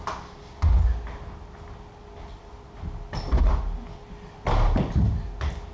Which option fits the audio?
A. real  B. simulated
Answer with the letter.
A